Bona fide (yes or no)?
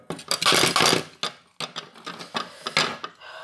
yes